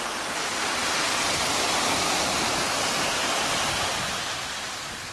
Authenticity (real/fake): real